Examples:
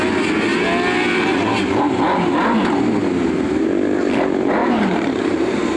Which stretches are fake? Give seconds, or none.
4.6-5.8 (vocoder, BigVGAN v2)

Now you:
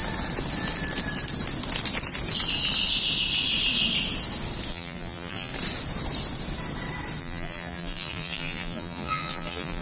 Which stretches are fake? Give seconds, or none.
4.7-5.5 (vocoder, BigVGAN v2); 7.2-9.8

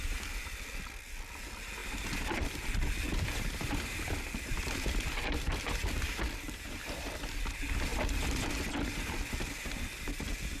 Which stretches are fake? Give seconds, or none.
0.0-7.9 (vocoder, BigVGAN v2); 9.1-10.6

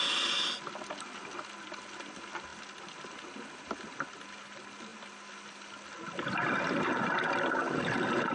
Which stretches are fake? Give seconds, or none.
none

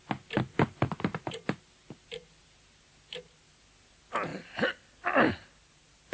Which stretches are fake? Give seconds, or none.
none

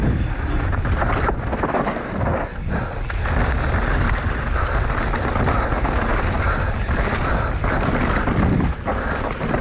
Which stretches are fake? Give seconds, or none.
0.0-0.5 (vocoder, BigVGAN v2); 8.2-9.6

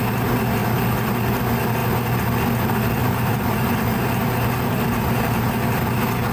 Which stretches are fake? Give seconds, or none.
3.0-5.5 (vocoder, BigVGAN v2)

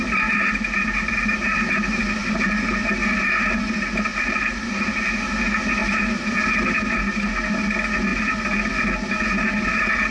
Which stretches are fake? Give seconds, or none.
4.1-5.1 (vocoder, BigVGAN v2); 5.8-6.4